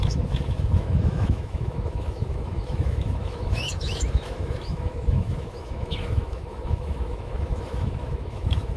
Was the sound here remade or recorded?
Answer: remade